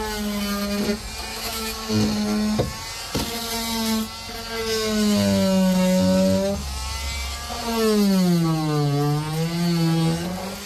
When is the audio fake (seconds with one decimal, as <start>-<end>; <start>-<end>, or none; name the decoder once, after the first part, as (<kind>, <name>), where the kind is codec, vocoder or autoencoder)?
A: 1.3-1.9 (autoencoder, DAC-VAE)